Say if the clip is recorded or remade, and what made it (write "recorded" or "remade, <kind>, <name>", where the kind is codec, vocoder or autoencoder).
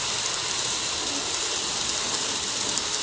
recorded